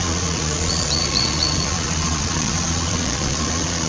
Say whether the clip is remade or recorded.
remade